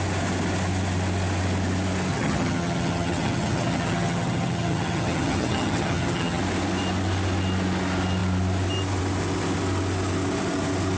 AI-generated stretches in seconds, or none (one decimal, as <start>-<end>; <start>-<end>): 2.1-6.4